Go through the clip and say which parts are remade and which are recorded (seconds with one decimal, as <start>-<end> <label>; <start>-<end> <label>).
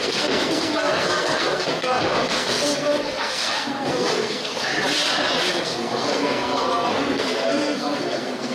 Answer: 0.0-4.7 remade; 4.7-5.5 recorded; 5.5-8.5 remade